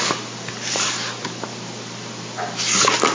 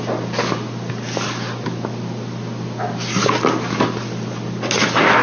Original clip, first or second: second